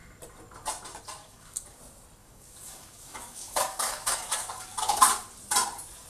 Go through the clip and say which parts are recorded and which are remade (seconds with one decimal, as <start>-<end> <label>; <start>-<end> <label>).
0.0-1.2 recorded; 1.2-1.8 remade; 1.8-2.2 recorded; 2.2-5.0 remade; 5.0-6.1 recorded

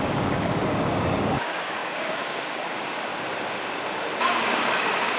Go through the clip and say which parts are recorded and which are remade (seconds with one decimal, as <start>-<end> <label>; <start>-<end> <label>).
0.0-3.1 remade; 3.1-4.4 recorded; 4.4-5.2 remade

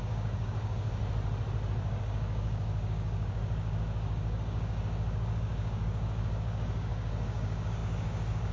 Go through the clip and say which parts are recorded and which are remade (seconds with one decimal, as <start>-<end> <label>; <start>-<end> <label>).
0.0-1.0 remade; 1.0-2.0 recorded; 2.0-8.5 remade

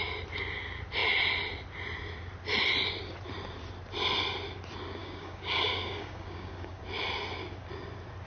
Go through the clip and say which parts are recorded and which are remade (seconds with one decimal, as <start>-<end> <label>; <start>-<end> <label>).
0.0-5.0 recorded; 5.0-6.8 remade; 6.8-8.3 recorded

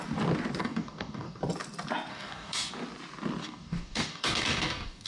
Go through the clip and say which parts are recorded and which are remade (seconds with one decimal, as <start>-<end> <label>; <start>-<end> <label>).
0.0-0.6 recorded; 0.6-1.4 remade; 1.4-2.1 recorded; 2.1-2.7 remade; 2.7-3.4 recorded; 3.4-5.1 remade

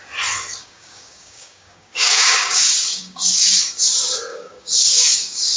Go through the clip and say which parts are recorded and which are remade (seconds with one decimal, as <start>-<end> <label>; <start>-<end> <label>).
0.0-0.6 recorded; 0.6-3.8 remade; 3.8-4.3 recorded; 4.3-5.6 remade

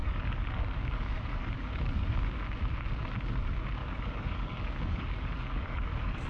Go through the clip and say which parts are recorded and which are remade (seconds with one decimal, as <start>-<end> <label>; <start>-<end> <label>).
0.0-2.4 remade; 2.4-3.8 recorded; 3.8-6.3 remade

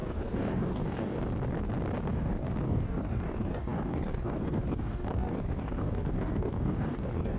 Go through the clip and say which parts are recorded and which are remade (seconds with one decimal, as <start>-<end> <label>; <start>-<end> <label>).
0.0-1.2 remade; 1.2-2.1 recorded; 2.1-7.4 remade